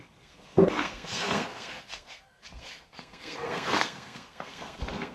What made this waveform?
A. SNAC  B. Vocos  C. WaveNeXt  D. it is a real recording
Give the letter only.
A